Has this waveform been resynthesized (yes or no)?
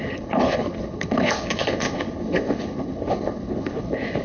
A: yes